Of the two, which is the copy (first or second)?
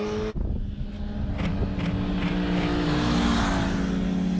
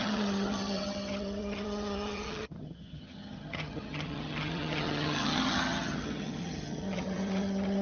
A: second